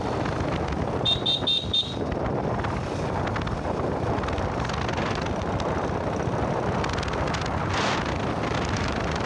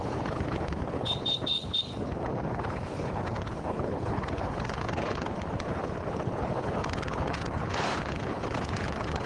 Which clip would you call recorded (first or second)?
first